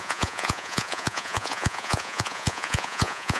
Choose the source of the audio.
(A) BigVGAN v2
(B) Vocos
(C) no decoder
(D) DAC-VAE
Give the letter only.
B